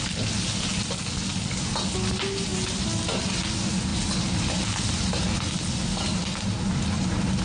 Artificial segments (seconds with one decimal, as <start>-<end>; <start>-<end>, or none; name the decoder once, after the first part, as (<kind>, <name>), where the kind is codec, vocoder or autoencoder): none